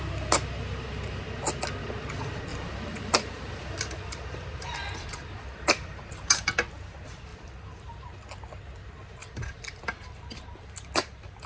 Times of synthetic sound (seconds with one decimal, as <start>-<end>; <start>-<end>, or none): 2.5-6.3; 7.3-8.0; 9.2-10.2